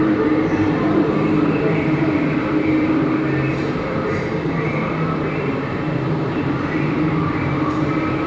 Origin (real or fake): fake